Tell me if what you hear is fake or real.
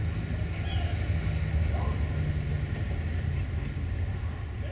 real